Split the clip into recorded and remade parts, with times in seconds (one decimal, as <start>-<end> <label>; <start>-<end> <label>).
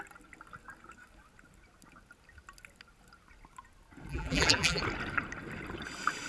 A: 0.0-4.1 recorded; 4.1-4.8 remade; 4.8-6.3 recorded